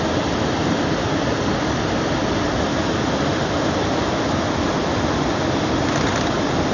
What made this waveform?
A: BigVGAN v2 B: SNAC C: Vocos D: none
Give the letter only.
D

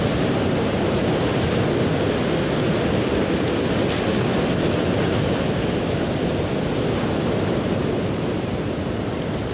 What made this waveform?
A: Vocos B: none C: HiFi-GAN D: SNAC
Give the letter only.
B